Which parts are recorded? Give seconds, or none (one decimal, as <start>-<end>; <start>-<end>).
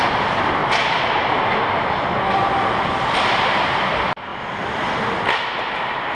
0.0-4.3; 4.9-6.1